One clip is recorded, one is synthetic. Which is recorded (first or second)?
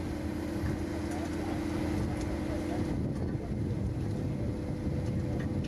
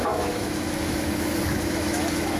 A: first